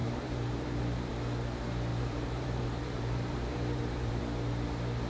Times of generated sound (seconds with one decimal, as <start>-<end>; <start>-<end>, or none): 0.0-1.1; 1.9-4.2